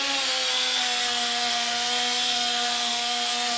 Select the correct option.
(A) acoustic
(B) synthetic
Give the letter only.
B